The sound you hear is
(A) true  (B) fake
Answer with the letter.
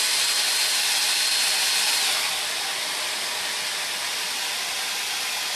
A